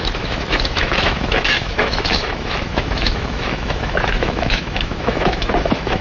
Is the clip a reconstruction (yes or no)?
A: yes